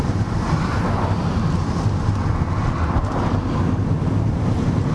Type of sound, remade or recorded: recorded